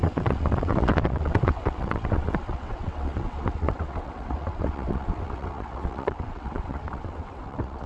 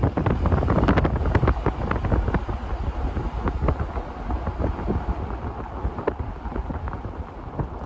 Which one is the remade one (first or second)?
first